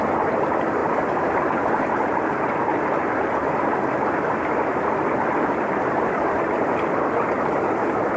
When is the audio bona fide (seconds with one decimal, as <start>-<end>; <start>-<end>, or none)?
2.7-4.0